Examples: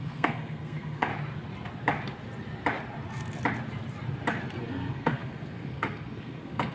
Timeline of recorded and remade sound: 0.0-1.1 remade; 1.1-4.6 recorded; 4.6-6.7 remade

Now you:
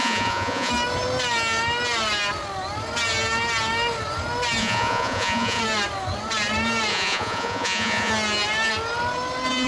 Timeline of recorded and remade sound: 0.0-0.7 remade; 0.7-4.6 recorded; 4.6-5.6 remade; 5.6-6.9 recorded; 6.9-8.1 remade; 8.1-9.7 recorded